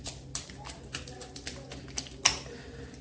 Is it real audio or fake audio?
real